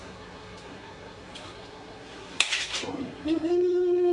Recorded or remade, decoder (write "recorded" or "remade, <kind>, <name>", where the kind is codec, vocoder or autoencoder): remade, codec, SNAC